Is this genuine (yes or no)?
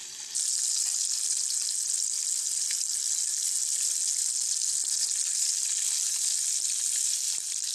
yes